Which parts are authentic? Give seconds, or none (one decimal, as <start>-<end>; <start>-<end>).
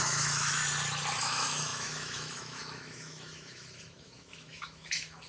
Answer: 0.6-1.2